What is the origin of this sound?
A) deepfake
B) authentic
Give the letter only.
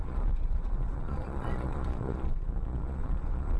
A